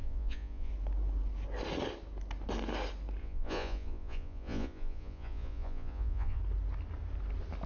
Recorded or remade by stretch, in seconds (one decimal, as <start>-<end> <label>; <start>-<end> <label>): 0.0-0.7 remade; 0.7-3.2 recorded; 3.2-6.4 remade; 6.4-7.7 recorded